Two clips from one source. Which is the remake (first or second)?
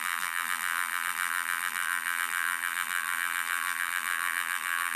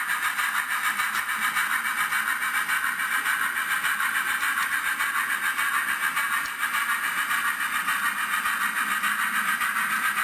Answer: first